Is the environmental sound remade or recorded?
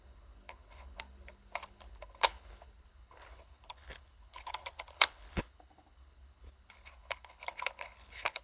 remade